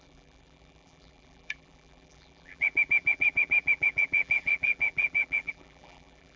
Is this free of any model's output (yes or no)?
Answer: no